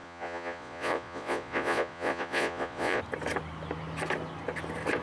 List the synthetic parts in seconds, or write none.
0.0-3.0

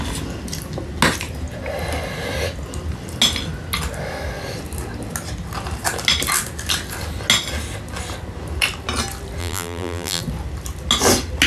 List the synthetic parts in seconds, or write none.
9.4-10.2

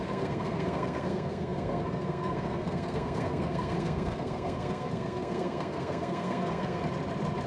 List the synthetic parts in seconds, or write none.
0.0-6.8

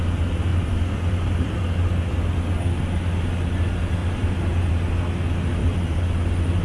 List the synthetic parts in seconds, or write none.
0.5-1.6; 4.0-4.7; 5.6-6.6

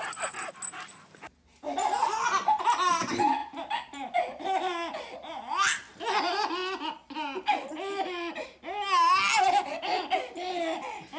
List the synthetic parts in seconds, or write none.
none

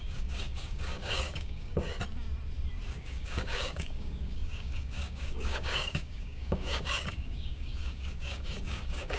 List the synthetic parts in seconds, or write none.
0.0-1.9; 2.9-9.2

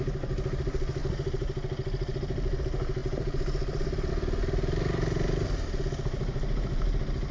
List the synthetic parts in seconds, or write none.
3.0-4.1

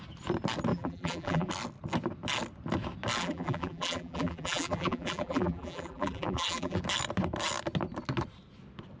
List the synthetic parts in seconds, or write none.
0.7-1.5; 3.2-6.8